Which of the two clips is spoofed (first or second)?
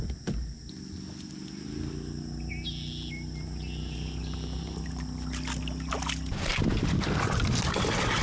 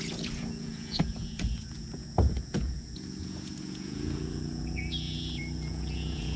second